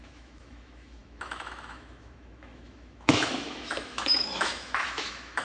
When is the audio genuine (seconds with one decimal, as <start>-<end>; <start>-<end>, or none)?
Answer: none